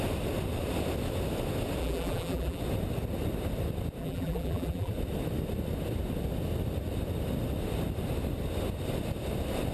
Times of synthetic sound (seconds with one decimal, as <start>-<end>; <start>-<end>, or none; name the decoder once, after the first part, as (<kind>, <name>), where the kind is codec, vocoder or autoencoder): 1.8-2.6 (vocoder, BigVGAN v2); 4.0-4.9